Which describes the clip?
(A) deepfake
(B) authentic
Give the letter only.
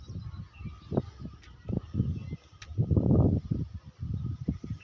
B